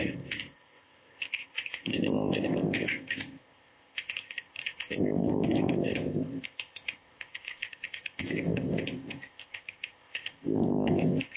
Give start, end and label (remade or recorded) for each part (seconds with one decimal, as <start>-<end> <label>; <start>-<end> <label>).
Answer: 0.0-11.4 remade